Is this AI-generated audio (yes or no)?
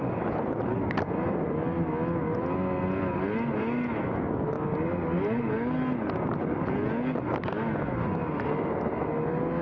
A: no